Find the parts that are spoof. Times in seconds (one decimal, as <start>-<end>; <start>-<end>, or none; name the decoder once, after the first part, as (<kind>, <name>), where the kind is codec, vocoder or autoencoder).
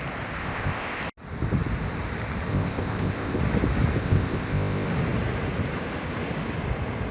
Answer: 0.4-1.0 (codec, ZipCodec); 2.5-3.4; 4.0-4.9